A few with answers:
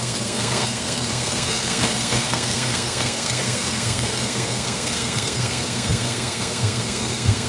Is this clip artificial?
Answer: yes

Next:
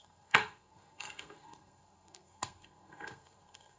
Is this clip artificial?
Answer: yes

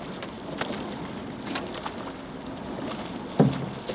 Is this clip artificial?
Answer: no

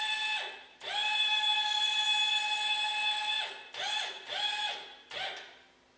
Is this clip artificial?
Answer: no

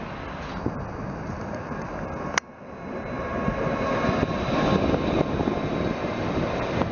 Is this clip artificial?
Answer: no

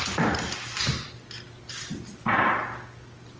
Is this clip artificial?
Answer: no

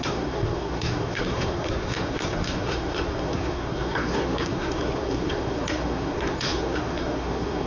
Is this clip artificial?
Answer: yes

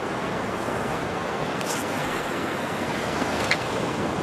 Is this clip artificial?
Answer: yes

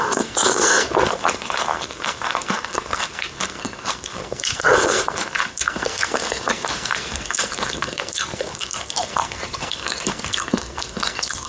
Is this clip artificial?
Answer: yes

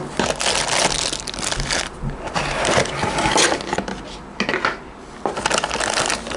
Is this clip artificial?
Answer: no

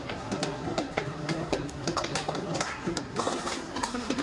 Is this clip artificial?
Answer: yes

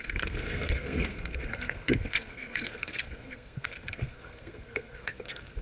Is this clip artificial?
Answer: yes